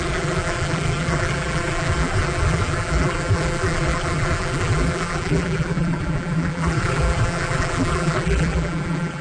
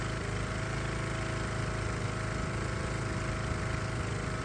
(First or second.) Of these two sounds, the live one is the second